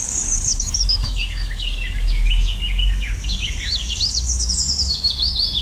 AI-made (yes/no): yes